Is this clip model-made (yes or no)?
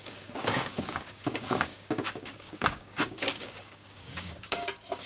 yes